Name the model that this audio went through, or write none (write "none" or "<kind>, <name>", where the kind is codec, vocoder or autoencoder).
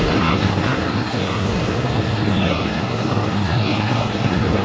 codec, SNAC